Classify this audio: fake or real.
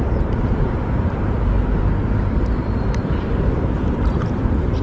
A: fake